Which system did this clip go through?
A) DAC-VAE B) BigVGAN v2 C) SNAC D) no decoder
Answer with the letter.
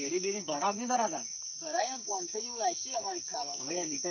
C